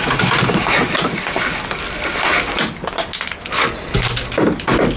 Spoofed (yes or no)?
no